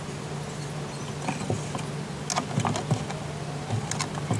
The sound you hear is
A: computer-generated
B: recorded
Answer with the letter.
B